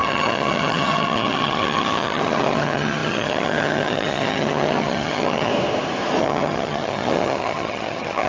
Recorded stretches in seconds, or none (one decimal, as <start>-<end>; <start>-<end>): 5.5-6.2